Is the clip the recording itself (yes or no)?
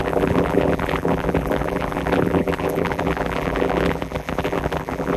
no